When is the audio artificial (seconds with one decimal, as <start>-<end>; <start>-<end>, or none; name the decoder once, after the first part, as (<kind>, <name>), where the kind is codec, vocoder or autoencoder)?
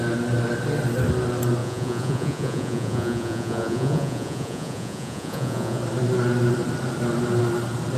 1.6-5.8 (vocoder, Vocos)